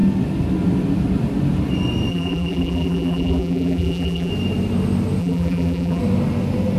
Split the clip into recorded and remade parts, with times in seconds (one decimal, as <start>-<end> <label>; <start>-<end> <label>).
0.0-2.1 recorded; 2.1-4.3 remade; 4.3-5.2 recorded; 5.2-6.0 remade; 6.0-6.8 recorded